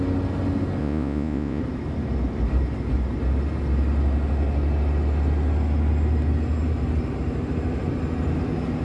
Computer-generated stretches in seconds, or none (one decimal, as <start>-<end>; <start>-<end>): 0.8-1.6